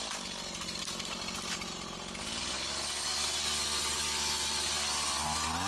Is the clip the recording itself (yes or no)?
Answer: yes